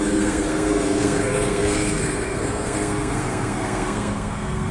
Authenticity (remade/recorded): remade